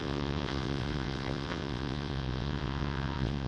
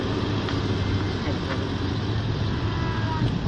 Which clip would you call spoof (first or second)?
first